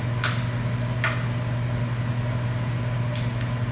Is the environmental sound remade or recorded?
recorded